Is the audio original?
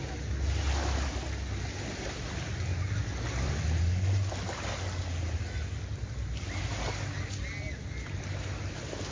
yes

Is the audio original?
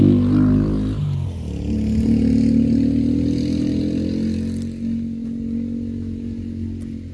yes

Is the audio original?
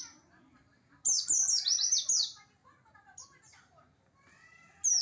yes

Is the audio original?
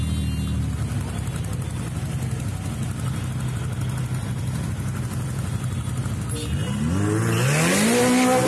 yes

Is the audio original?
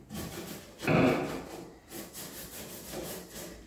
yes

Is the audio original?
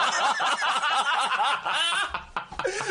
yes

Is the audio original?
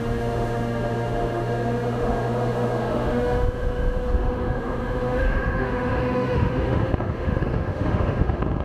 no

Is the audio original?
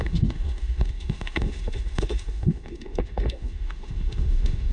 no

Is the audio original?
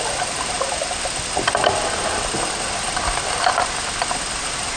yes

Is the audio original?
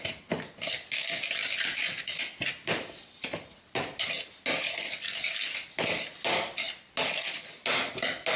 yes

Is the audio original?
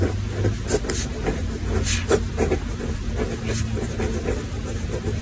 yes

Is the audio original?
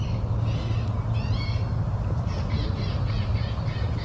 yes